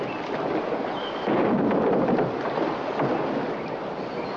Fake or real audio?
real